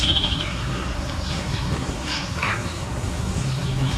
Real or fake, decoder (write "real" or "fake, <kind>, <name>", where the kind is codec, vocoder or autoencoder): fake, codec, SNAC